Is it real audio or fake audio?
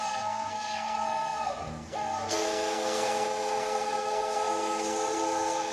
fake